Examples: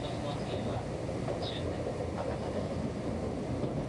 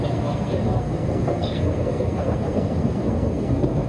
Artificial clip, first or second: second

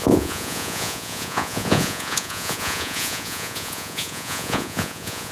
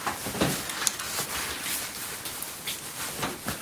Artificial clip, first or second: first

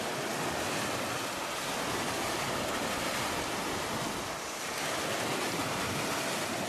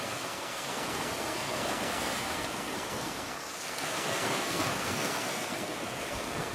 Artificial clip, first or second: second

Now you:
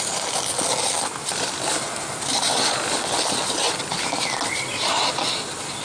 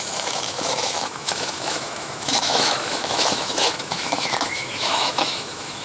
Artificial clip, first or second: second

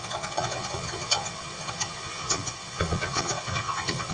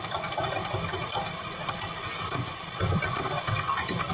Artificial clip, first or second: first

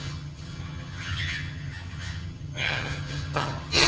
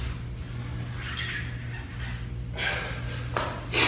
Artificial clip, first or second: first